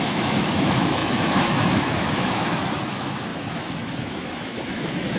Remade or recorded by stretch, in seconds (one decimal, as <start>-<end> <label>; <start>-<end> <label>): 0.0-5.2 remade